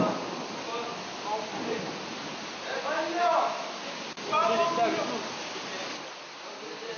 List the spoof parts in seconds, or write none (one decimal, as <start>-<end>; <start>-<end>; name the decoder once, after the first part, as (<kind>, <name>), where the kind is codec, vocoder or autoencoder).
3.2-4.0 (autoencoder, DAC-VAE)